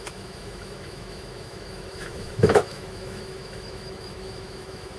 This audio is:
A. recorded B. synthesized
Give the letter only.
B